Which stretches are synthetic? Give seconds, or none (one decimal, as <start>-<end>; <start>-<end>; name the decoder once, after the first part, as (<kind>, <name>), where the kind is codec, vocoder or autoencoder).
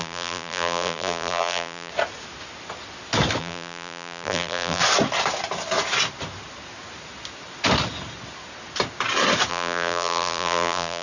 0.0-1.9 (vocoder, BigVGAN v2); 3.4-4.8; 9.5-11.0